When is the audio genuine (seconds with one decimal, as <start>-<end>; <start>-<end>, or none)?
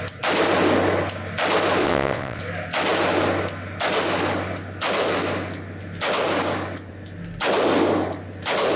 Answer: 0.0-1.8; 2.4-8.8